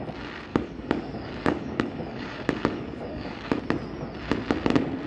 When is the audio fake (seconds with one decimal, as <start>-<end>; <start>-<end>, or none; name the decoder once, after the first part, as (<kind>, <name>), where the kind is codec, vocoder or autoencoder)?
0.5-3.6 (codec, DAC)

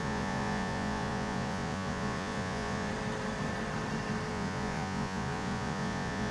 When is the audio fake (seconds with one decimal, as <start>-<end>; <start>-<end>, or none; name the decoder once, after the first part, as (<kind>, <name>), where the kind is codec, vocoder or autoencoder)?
0.0-2.9 (vocoder, Vocos); 4.3-6.3